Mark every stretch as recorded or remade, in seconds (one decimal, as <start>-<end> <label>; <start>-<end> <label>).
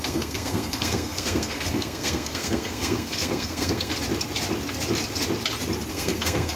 0.0-3.9 remade; 3.9-5.9 recorded; 5.9-6.6 remade